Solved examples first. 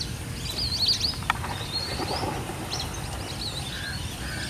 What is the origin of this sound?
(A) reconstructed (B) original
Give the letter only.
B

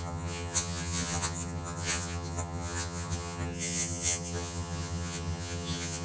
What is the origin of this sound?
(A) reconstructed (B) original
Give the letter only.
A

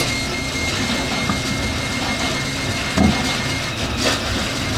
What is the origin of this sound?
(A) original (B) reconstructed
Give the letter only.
A